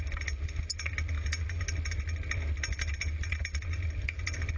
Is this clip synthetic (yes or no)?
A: no